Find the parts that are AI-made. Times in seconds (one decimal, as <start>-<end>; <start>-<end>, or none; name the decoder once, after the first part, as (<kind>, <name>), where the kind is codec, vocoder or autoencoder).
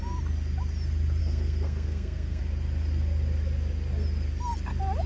1.2-2.4 (codec, SNAC)